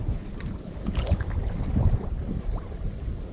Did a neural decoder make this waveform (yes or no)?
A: no